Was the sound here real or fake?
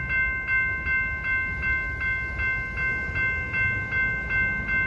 real